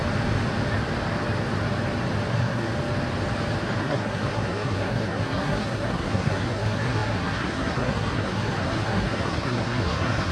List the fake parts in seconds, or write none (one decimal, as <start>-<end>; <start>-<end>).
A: 2.3-2.7; 3.8-10.3